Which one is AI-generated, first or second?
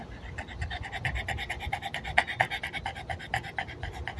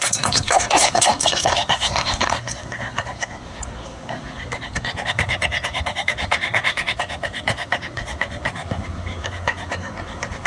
second